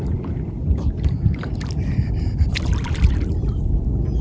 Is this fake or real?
real